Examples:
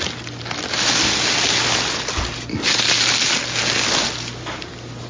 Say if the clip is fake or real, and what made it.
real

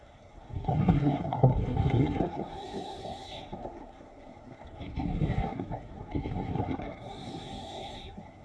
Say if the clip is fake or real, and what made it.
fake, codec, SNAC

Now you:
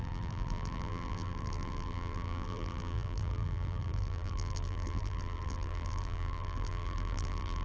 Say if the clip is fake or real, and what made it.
fake, vocoder, BigVGAN v2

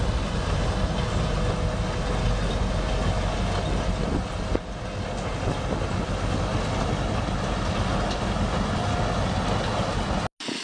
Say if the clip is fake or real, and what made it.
real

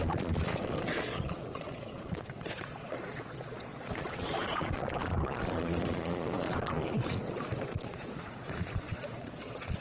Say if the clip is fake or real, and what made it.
fake, vocoder, Vocos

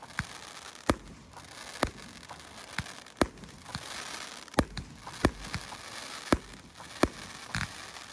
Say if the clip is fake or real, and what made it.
real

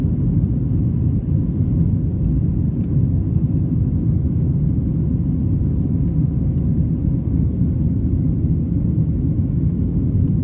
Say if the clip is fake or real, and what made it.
real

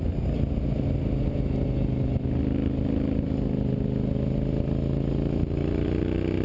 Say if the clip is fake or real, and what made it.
real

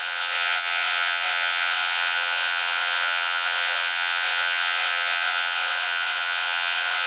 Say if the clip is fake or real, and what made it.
fake, vocoder, WaveNeXt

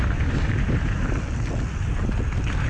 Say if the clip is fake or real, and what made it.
real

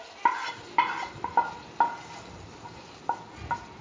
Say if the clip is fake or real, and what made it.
real